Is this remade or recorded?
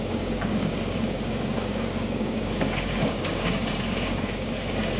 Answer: remade